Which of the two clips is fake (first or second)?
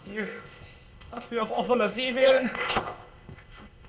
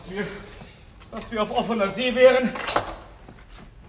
first